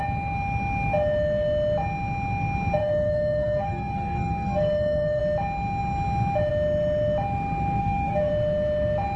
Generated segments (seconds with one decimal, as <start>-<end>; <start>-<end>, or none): 2.8-5.2; 7.8-8.3